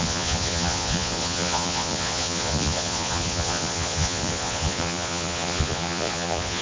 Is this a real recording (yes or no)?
no